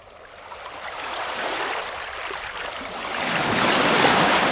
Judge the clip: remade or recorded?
remade